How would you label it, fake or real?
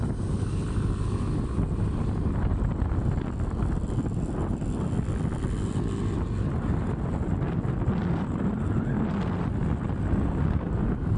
real